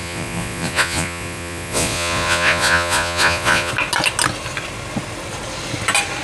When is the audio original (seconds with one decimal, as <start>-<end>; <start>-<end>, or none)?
3.7-6.2